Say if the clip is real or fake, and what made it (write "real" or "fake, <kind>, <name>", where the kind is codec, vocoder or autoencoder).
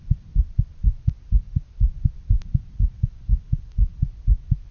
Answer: real